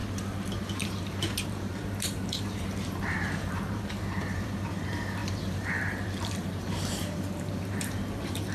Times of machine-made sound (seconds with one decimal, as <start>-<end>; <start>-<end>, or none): 0.6-8.5